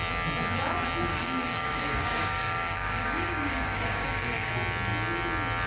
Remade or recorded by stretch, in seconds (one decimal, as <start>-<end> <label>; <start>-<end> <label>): 0.0-1.1 recorded; 1.1-4.5 remade; 4.5-5.7 recorded